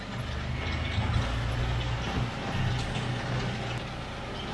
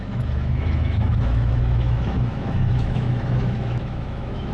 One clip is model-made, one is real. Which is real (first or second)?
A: first